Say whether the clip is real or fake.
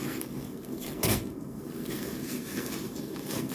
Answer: fake